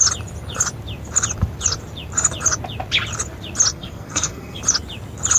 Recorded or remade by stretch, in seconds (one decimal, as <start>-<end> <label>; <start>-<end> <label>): 0.0-3.7 recorded; 3.7-4.6 remade; 4.6-5.4 recorded